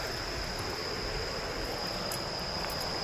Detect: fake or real real